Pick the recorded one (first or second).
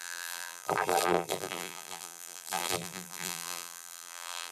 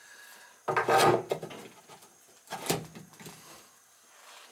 second